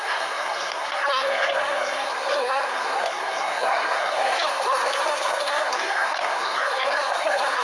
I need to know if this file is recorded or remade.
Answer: remade